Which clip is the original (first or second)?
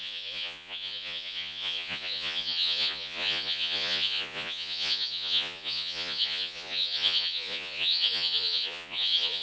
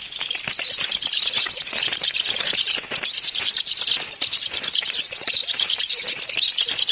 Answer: second